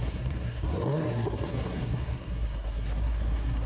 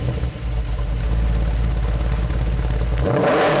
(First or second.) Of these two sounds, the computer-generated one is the first